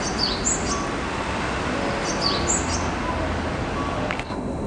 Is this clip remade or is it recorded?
recorded